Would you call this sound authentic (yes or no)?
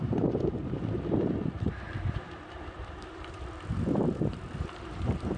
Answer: no